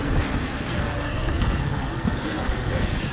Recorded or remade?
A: remade